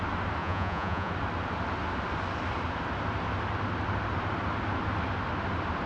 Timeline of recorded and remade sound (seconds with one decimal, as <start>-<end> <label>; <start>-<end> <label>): 0.0-0.4 recorded; 0.4-1.1 remade; 1.1-5.9 recorded